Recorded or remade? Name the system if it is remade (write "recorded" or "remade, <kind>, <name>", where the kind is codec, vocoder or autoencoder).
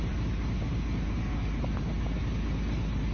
recorded